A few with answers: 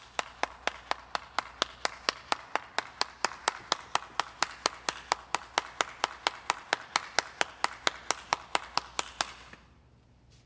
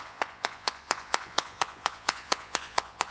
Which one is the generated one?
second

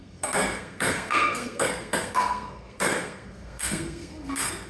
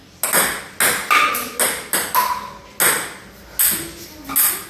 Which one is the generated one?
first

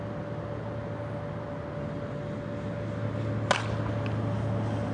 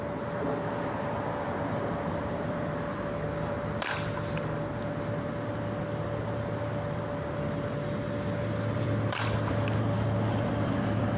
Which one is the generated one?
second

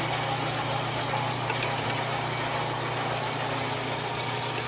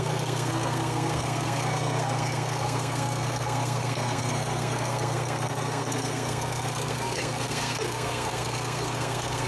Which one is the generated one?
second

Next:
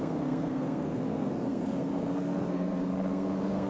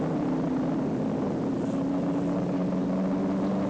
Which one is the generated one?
first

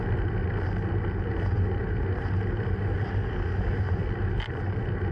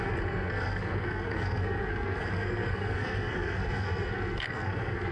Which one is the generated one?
second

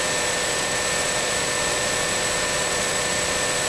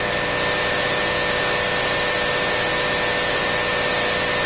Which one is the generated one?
first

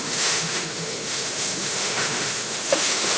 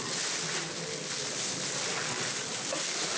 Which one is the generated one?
first